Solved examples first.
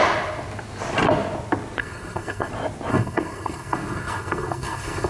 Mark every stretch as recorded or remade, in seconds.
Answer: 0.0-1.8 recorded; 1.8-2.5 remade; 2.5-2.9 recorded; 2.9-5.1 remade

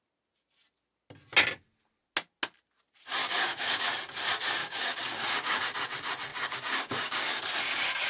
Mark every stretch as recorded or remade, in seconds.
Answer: 0.0-3.2 recorded; 3.2-3.9 remade; 3.9-4.6 recorded; 4.6-5.6 remade; 5.6-6.3 recorded; 6.3-7.4 remade; 7.4-8.1 recorded

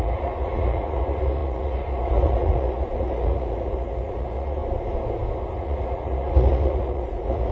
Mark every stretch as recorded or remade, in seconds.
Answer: 0.0-4.6 remade; 4.6-5.5 recorded; 5.5-7.5 remade

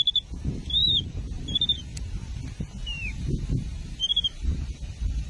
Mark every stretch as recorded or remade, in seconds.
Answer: 0.0-0.8 recorded; 0.8-1.4 remade; 1.4-2.8 recorded; 2.8-5.3 remade

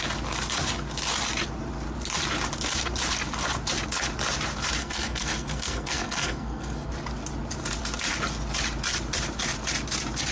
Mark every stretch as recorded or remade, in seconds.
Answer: 0.0-4.8 recorded; 4.8-6.9 remade; 6.9-10.3 recorded

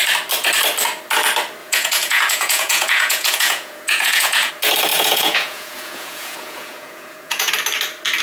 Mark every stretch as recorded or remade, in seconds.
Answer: 0.0-1.6 recorded; 1.6-4.5 remade; 4.5-4.9 recorded; 4.9-7.5 remade; 7.5-8.2 recorded